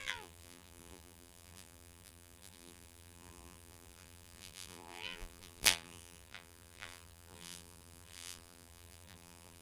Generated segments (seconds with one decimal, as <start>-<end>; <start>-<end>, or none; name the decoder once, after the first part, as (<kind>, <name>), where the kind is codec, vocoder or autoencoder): 0.0-9.6 (vocoder, BigVGAN v2)